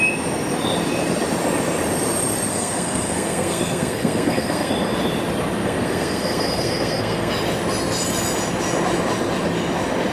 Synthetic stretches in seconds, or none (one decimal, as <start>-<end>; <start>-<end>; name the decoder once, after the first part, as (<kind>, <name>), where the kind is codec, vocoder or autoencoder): 2.5-4.7 (codec, SNAC); 5.6-7.3